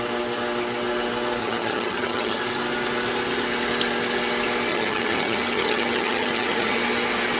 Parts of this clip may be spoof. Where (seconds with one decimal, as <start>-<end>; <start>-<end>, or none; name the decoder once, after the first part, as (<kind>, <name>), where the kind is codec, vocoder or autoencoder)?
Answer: 1.4-2.4 (vocoder, HiFi-GAN); 4.7-6.8